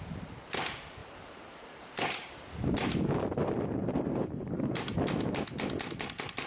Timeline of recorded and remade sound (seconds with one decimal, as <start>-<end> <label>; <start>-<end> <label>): 0.0-1.0 recorded; 1.0-2.5 remade; 2.5-3.8 recorded; 3.8-4.8 remade; 4.8-6.5 recorded